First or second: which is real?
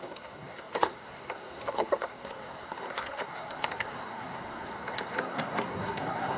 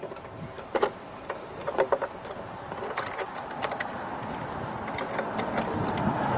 second